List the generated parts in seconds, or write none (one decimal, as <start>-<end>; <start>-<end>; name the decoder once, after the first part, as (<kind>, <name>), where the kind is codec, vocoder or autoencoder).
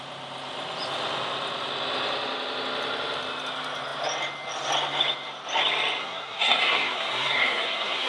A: 6.0-8.1 (codec, SNAC)